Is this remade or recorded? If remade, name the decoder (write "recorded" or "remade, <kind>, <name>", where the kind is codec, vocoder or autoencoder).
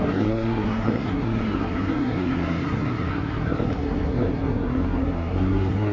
remade, codec, SNAC